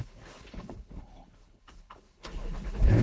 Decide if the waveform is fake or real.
fake